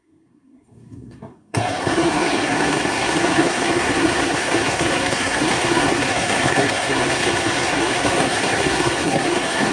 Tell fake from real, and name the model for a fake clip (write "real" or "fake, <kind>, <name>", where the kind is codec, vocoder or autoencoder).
fake, codec, SNAC